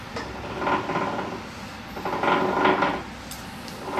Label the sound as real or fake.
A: real